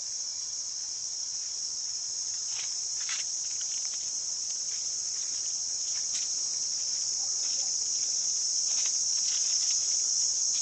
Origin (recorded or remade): remade